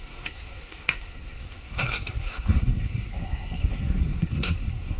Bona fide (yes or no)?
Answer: no